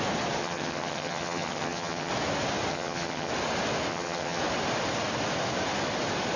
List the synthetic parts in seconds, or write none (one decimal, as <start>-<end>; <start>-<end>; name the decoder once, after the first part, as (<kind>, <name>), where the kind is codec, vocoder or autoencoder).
0.4-2.1 (vocoder, HiFi-GAN); 2.7-3.3; 3.9-4.4